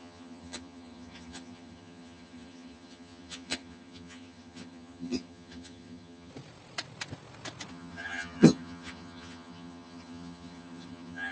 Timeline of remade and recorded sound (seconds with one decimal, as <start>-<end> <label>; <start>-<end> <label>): 0.0-6.3 remade; 6.3-7.7 recorded; 7.7-11.3 remade